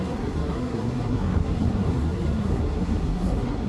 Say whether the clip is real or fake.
fake